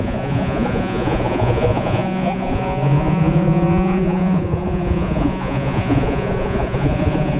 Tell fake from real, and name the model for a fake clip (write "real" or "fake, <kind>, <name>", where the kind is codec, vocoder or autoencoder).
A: fake, vocoder, Vocos